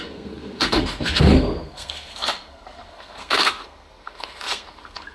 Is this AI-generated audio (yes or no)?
yes